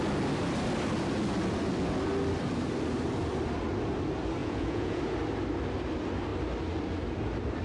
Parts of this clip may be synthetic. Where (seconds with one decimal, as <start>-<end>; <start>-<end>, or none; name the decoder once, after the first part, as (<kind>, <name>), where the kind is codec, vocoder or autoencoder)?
4.4-5.0 (vocoder, Vocos)